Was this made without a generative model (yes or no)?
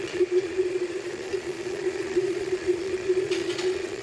no